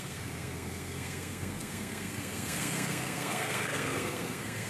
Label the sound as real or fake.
fake